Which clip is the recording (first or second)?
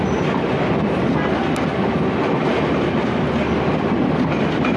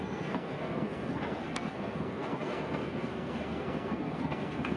first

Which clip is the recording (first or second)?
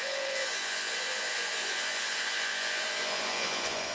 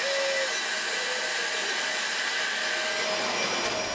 second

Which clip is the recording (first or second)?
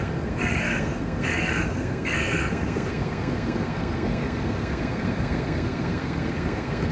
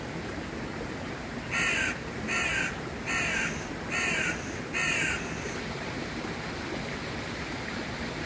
second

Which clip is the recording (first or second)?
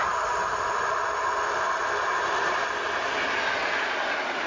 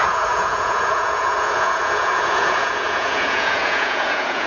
first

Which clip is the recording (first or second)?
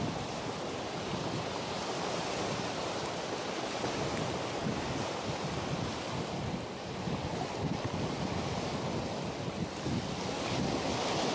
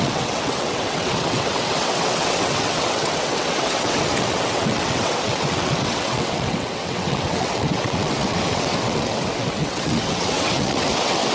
first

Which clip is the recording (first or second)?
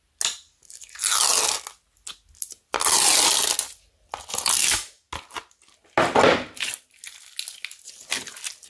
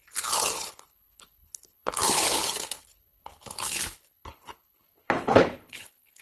first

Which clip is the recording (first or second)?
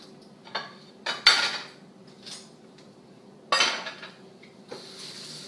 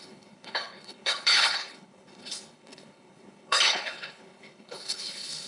first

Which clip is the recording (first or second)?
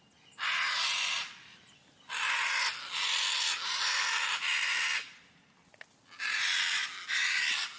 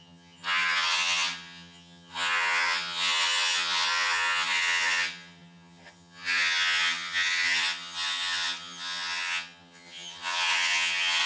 first